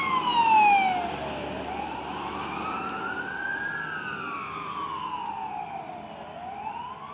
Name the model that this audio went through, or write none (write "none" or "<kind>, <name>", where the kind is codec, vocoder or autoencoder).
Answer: none